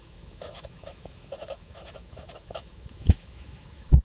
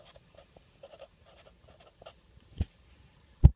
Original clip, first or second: second